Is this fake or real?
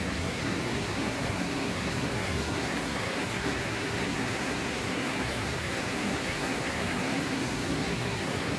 fake